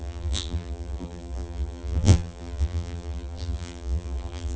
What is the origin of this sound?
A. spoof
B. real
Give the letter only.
A